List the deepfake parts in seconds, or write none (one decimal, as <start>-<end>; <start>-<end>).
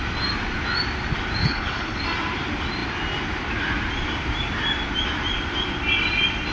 1.4-2.0